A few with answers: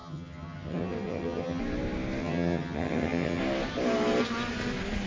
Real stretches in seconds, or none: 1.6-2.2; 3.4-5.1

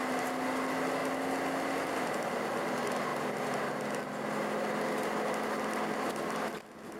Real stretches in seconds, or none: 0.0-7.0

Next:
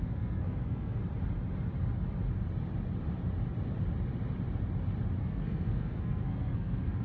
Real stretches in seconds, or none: 1.0-5.2